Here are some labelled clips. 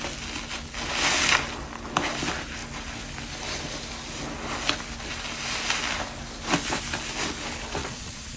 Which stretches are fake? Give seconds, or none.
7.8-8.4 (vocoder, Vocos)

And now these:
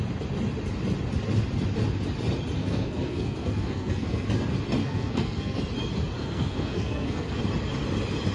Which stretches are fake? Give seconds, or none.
2.6-4.3 (codec, SNAC); 4.8-5.6; 6.2-7.4

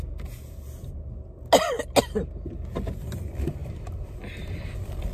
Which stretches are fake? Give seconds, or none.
3.6-5.1 (vocoder, BigVGAN v2)

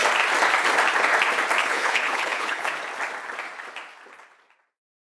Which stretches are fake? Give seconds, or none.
1.6-2.7 (codec, HILCodec)

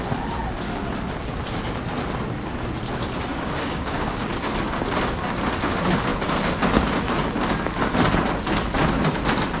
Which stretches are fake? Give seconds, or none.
3.3-4.2 (codec, DAC)

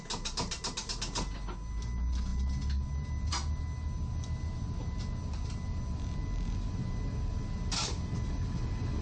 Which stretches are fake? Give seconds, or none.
none

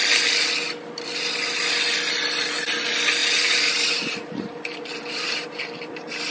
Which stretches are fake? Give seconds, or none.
3.2-6.3 (vocoder, BigVGAN v2)

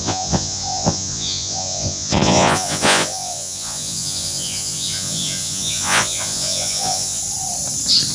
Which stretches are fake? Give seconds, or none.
0.0-7.2 (vocoder, Vocos)